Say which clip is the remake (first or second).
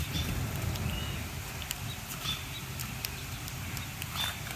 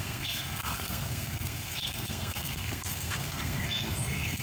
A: second